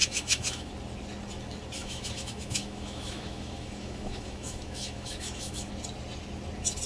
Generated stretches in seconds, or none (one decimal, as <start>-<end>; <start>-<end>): 0.0-0.7; 1.8-5.7